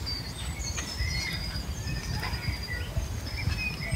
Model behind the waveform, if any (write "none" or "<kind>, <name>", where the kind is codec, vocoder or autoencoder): none